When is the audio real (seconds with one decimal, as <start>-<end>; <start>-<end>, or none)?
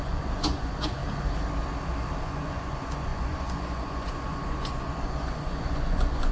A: 1.0-2.2